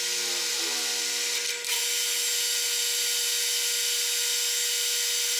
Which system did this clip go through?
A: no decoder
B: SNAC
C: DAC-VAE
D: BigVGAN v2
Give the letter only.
A